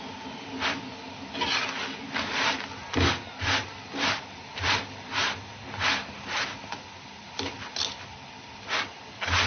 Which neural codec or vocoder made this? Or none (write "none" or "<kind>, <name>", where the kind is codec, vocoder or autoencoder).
none